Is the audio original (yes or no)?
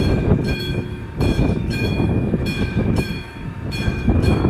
no